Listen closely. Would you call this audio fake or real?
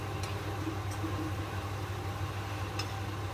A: real